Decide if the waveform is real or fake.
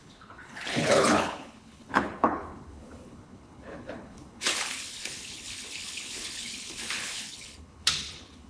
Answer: fake